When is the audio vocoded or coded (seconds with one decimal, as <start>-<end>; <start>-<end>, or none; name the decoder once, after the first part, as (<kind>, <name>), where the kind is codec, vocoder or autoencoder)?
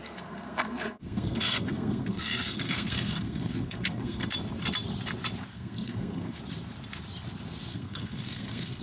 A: 0.0-4.3 (codec, SNAC); 5.5-6.4; 7.7-8.8